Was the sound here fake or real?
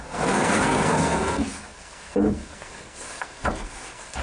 fake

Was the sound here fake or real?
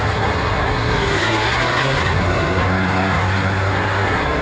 fake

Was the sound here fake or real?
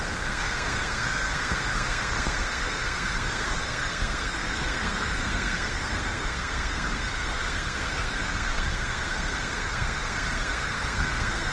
fake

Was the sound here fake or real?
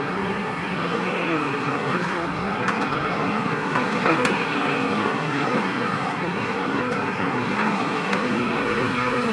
fake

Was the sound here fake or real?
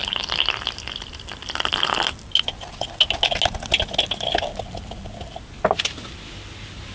real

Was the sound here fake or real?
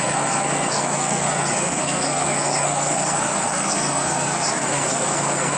fake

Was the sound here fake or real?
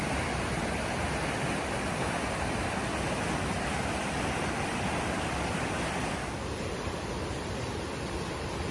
real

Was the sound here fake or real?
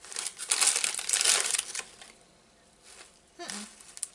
real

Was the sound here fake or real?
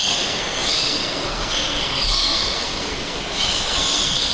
fake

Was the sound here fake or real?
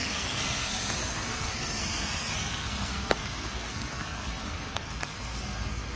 fake